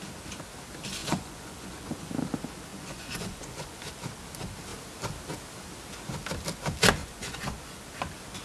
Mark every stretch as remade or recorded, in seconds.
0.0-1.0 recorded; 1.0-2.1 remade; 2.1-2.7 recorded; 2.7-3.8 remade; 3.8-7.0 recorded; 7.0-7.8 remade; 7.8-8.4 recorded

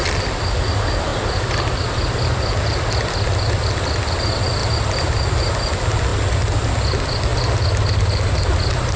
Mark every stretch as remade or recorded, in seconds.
0.0-4.6 recorded; 4.6-5.5 remade; 5.5-9.0 recorded

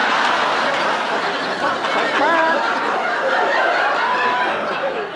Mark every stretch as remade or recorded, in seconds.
0.0-2.4 recorded; 2.4-4.0 remade; 4.0-5.2 recorded

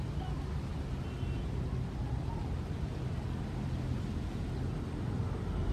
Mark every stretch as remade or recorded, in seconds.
0.0-5.7 recorded

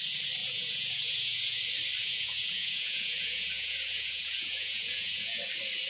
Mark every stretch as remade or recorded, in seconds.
0.0-0.4 recorded; 0.4-1.6 remade; 1.6-2.0 recorded; 2.0-5.5 remade; 5.5-5.9 recorded